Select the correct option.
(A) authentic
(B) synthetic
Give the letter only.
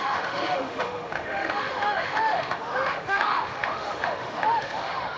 B